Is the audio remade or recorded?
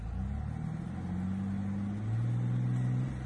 recorded